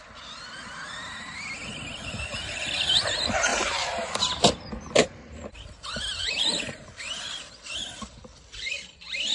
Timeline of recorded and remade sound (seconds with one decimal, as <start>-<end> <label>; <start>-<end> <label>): 0.0-3.5 recorded; 3.5-4.7 remade; 4.7-6.2 recorded; 6.2-6.8 remade; 6.8-9.3 recorded